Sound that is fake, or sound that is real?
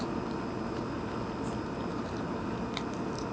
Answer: real